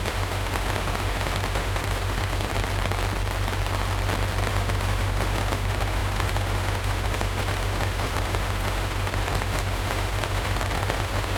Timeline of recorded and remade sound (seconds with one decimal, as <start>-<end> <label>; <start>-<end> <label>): 0.0-2.5 remade; 2.5-4.5 recorded; 4.5-11.4 remade